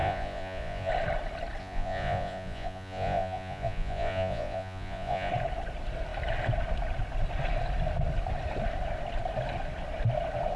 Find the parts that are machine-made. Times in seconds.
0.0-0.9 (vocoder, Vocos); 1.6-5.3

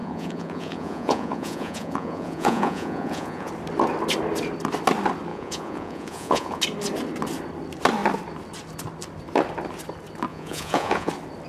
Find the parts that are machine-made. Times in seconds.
0.0-3.5 (vocoder, Vocos); 5.3-6.6; 10.3-11.1

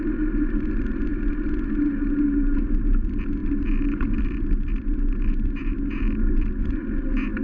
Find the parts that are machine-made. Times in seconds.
none

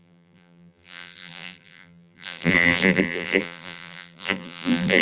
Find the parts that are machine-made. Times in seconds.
0.0-5.0 (vocoder, BigVGAN v2)

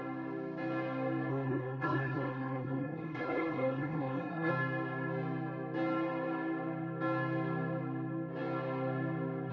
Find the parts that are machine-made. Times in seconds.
1.3-4.5 (codec, SNAC)

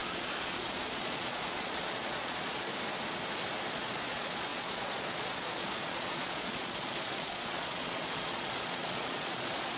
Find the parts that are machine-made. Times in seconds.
0.0-2.7 (vocoder, Vocos); 3.7-9.8

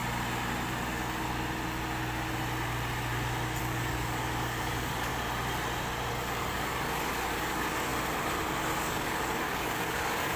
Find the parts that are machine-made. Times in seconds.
3.6-5.1 (codec, DAC); 6.1-7.9; 8.8-10.4